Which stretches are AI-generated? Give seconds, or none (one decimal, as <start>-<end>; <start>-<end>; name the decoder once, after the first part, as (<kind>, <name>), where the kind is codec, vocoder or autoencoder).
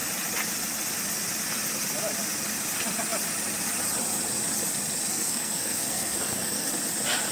5.1-6.7 (codec, SNAC)